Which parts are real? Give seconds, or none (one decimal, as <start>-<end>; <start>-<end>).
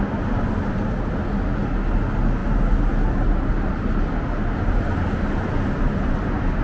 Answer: 0.0-6.6